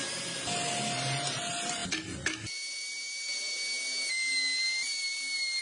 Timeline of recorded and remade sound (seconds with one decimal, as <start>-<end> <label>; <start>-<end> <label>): 0.0-5.6 recorded